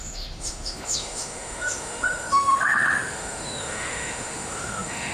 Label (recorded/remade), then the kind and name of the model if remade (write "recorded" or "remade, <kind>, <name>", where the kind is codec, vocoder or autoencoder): remade, autoencoder, DAC-VAE